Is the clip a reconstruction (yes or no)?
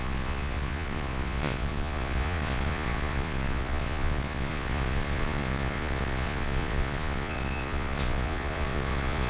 yes